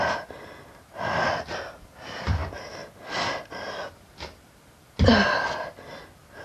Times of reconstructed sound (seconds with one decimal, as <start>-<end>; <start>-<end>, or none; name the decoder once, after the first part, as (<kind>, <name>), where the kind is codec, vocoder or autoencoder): none